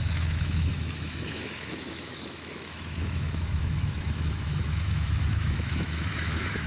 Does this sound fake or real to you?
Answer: fake